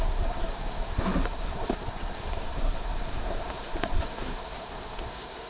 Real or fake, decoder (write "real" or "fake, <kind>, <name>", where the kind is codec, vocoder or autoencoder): fake, codec, SNAC